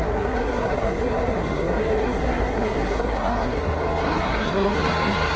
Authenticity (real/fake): fake